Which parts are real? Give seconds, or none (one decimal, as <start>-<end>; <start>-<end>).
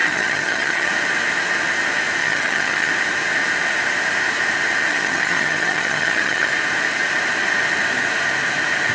0.9-2.2; 2.9-4.9; 6.5-8.9